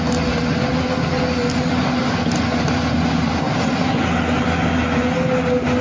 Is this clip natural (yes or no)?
yes